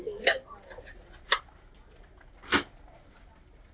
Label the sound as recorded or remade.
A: recorded